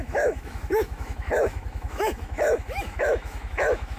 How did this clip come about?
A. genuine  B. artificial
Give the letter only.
B